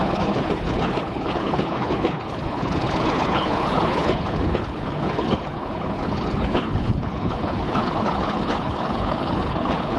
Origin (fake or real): fake